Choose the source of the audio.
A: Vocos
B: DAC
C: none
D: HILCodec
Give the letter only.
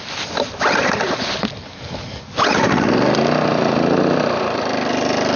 C